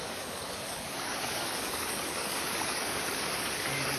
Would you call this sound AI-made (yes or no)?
yes